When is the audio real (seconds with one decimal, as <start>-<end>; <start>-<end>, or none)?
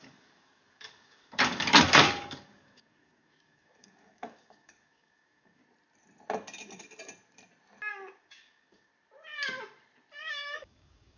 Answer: 5.6-8.2; 8.9-10.3